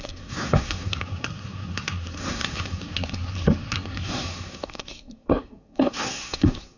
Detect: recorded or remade remade